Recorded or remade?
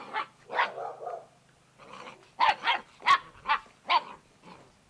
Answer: recorded